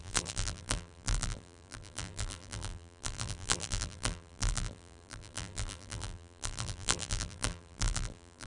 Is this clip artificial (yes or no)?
yes